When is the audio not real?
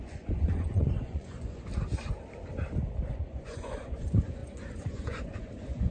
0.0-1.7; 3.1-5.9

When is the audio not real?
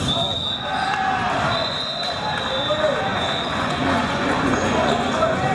1.6-2.1; 3.1-5.5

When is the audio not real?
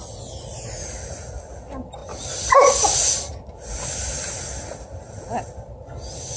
none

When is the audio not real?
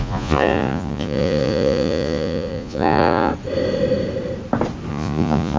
0.0-3.3; 4.9-5.6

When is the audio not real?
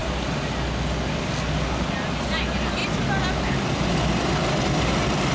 none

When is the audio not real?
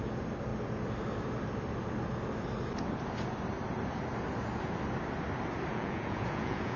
5.7-6.8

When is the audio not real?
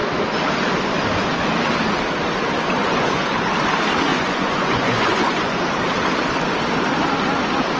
2.8-3.3; 4.1-5.6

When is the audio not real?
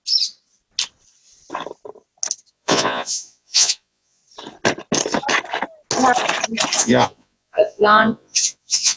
2.5-4.2; 6.8-9.0